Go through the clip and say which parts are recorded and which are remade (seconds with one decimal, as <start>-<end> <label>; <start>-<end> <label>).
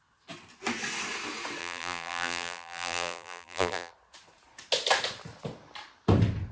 0.0-1.6 recorded; 1.6-3.9 remade; 3.9-6.5 recorded